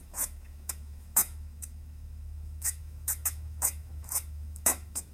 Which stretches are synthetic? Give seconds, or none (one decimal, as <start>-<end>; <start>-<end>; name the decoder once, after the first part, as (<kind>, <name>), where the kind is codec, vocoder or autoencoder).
0.0-5.1 (autoencoder, DAC-VAE)